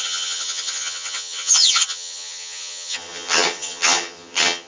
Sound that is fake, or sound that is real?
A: fake